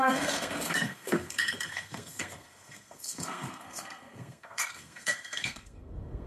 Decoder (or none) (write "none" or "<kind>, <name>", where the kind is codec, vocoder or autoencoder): codec, SNAC